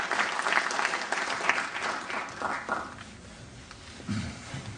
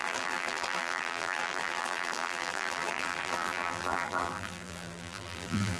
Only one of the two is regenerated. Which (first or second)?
second